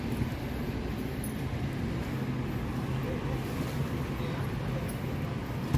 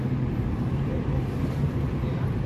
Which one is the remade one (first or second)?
second